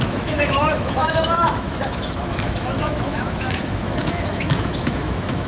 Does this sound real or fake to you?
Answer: fake